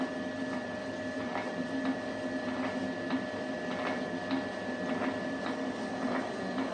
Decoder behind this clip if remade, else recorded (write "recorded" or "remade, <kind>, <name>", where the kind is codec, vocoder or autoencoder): recorded